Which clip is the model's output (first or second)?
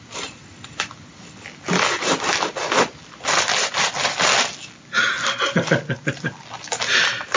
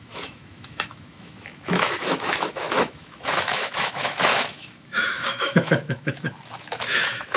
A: second